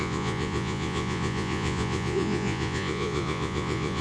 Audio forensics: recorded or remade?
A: remade